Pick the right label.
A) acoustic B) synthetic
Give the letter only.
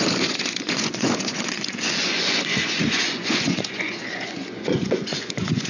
B